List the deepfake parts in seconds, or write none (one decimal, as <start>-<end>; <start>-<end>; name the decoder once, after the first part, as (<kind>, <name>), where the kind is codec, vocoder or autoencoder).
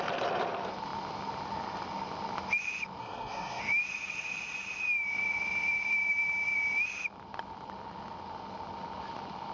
3.0-3.6 (codec, SNAC)